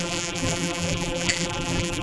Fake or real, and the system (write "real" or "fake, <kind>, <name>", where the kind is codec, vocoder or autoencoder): fake, vocoder, BigVGAN v2